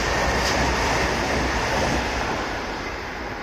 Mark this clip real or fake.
real